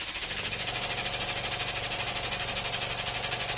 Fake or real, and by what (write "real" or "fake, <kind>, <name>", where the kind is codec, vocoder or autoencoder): real